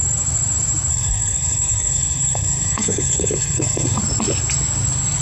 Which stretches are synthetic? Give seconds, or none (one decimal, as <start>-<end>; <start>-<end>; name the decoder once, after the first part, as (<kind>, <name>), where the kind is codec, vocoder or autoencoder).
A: 0.9-4.0 (codec, SNAC)